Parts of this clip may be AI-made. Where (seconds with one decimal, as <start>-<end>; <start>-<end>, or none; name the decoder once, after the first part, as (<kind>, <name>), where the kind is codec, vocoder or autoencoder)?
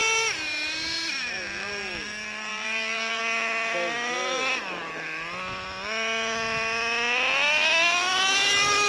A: 2.5-3.2 (vocoder, BigVGAN v2)